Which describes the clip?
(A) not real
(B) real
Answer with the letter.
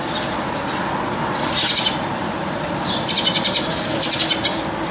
B